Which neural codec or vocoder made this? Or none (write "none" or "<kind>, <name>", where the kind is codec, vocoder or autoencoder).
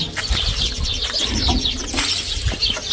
none